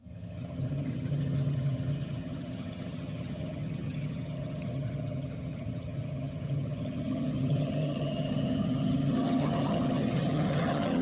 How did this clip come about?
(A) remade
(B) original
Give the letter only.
A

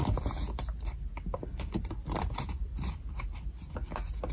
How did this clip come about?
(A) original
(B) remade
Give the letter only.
A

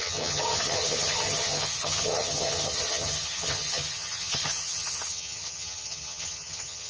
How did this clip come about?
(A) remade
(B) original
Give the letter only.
A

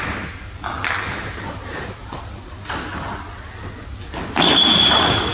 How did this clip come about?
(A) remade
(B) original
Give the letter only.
B